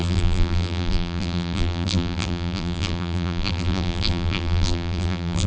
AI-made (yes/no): yes